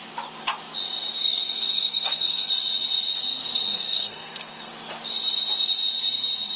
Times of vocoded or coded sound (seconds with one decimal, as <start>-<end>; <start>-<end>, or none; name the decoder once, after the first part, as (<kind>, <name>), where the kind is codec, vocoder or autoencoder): 1.1-2.5 (codec, SNAC); 3.7-4.7